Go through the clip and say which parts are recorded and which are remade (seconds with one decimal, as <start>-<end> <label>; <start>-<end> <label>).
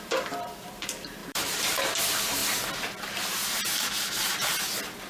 0.0-2.4 remade; 2.4-4.1 recorded; 4.1-4.5 remade; 4.5-5.1 recorded